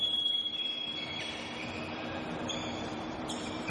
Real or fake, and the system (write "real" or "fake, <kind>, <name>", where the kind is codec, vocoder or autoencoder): fake, vocoder, BigVGAN v2